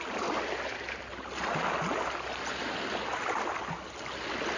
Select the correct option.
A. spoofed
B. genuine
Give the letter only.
B